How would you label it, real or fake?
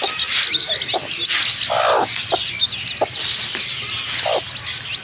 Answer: real